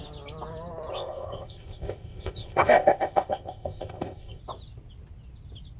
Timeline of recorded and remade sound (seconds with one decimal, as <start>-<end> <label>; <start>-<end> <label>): 0.0-0.9 recorded; 0.9-4.4 remade; 4.4-5.8 recorded